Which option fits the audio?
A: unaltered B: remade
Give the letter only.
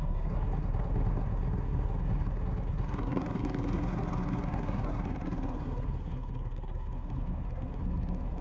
B